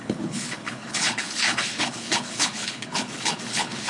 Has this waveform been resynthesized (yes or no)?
yes